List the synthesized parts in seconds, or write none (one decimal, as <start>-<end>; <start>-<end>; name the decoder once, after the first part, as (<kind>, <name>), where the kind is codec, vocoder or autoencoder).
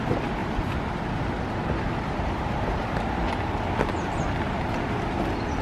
0.0-0.4 (vocoder, BigVGAN v2); 2.2-3.2